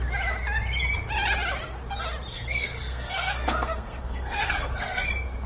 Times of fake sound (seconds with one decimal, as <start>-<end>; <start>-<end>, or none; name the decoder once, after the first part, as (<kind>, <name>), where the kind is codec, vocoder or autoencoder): 2.3-5.1 (codec, SNAC)